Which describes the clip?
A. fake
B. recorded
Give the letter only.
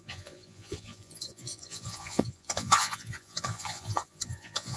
A